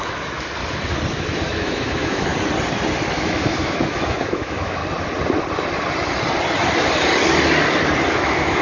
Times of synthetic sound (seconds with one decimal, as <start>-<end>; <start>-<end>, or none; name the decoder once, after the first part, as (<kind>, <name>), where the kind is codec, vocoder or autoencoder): 0.0-0.6 (autoencoder, DAC-VAE); 1.1-2.3; 3.2-4.8; 8.1-8.6